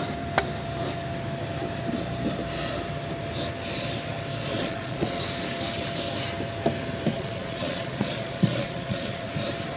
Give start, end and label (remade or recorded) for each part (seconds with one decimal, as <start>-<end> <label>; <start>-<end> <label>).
0.0-4.5 recorded; 4.5-5.2 remade; 5.2-7.1 recorded; 7.1-9.3 remade; 9.3-9.8 recorded